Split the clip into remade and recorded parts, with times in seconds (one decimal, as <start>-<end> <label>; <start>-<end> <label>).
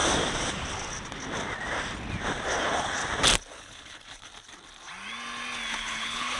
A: 0.0-2.6 recorded; 2.6-3.0 remade; 3.0-3.5 recorded; 3.5-4.3 remade; 4.3-5.7 recorded; 5.7-6.4 remade